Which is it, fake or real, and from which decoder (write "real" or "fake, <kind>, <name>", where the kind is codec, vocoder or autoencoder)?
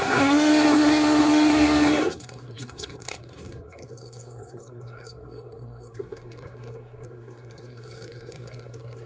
fake, codec, SNAC